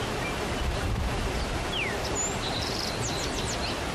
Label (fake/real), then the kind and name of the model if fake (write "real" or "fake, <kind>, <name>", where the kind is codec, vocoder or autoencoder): real